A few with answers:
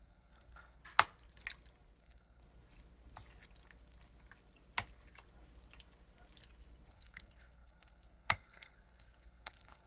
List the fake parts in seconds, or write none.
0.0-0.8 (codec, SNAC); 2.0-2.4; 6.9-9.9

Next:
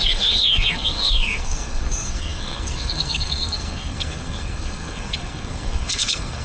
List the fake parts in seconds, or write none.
0.0-6.4 (codec, SNAC)